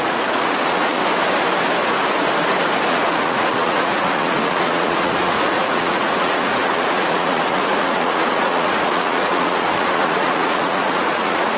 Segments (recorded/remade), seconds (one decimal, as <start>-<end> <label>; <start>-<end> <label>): 0.0-1.0 remade; 1.0-2.9 recorded; 2.9-11.6 remade